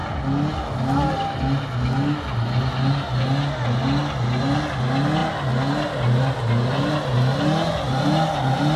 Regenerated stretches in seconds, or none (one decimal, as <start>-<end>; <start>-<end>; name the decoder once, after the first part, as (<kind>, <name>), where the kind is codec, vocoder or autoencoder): none